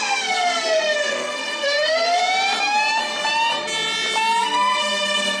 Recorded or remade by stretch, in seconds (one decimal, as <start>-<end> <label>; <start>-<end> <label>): 0.0-2.2 remade; 2.2-4.4 recorded; 4.4-5.4 remade